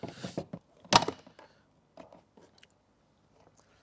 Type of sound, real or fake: real